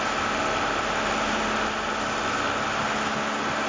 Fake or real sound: real